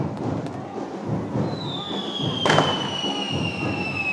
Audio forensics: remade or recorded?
recorded